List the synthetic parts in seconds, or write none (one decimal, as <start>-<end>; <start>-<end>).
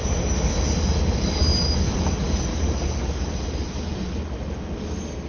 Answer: none